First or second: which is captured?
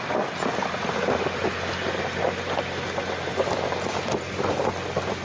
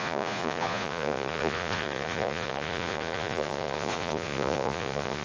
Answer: first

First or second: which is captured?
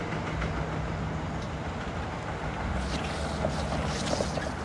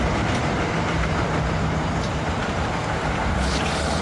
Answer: first